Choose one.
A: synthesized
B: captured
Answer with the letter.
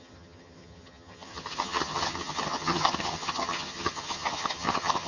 A